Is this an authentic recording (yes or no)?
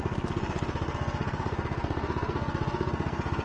no